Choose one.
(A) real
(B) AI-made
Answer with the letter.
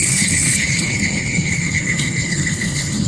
B